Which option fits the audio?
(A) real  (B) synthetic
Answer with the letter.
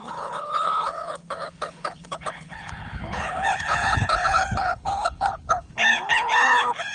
B